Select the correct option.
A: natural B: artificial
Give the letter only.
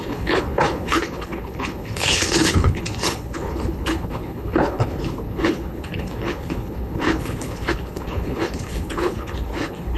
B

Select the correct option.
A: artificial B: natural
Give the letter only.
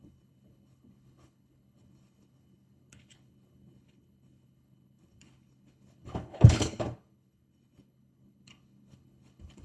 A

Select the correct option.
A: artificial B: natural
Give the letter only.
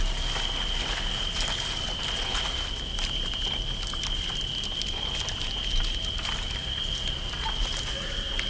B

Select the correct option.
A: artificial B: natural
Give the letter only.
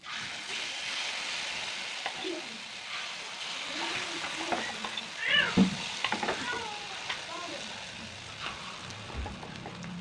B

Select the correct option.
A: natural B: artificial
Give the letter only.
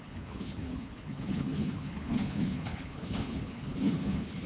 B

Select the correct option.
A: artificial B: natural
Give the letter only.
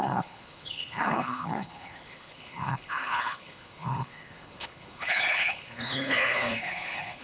A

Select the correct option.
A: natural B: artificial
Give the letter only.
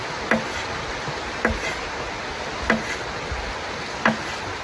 A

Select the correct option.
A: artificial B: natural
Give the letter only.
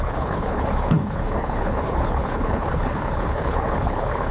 A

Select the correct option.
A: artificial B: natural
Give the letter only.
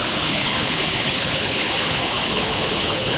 A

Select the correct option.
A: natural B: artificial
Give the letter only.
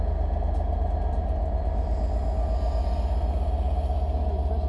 A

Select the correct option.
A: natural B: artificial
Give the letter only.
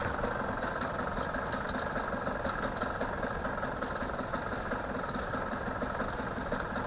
A